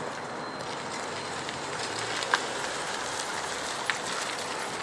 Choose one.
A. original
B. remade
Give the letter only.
A